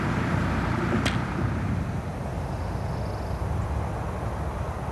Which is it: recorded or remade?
recorded